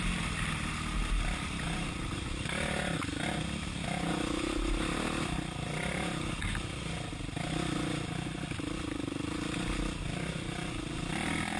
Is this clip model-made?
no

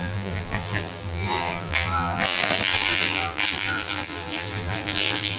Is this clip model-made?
yes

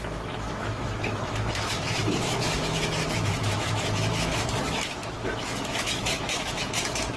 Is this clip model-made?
yes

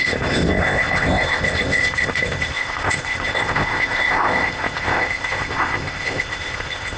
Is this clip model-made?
yes